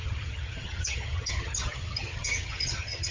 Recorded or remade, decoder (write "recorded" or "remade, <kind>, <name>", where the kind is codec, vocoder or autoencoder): remade, vocoder, HiFi-GAN